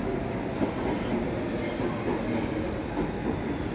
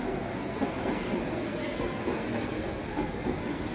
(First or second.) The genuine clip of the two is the first